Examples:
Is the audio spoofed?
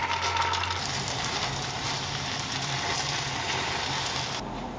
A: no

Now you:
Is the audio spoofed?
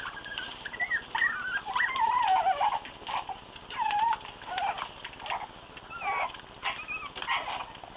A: no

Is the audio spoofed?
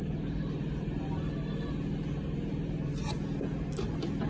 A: no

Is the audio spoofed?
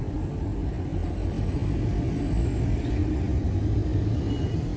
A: no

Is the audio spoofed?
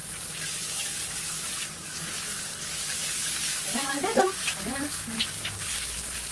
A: yes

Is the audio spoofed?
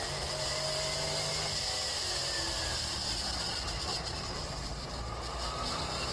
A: no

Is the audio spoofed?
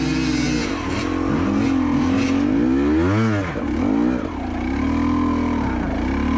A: no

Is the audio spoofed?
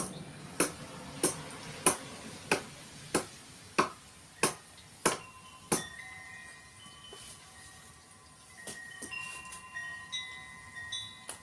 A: no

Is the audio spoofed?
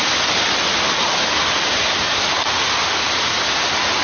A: no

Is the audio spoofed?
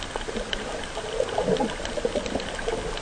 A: no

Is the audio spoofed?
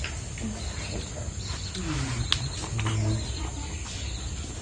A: no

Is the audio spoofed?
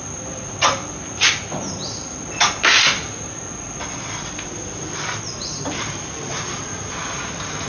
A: no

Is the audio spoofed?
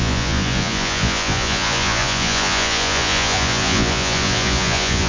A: yes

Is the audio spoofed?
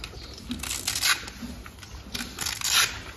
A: no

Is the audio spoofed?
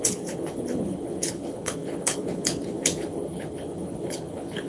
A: yes